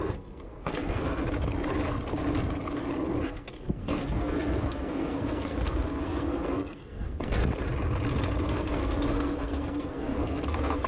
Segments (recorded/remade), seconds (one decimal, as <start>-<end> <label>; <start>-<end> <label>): 0.0-1.2 remade; 1.2-3.2 recorded; 3.2-7.4 remade; 7.4-8.4 recorded; 8.4-10.9 remade